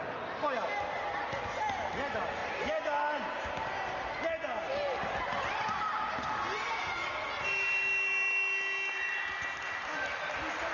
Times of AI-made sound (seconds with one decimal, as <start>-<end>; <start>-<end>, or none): none